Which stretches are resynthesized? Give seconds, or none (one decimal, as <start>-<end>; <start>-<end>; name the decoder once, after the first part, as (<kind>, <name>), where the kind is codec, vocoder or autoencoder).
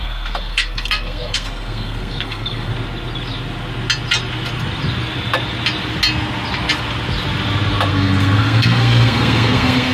0.0-2.7 (codec, SNAC); 7.9-9.9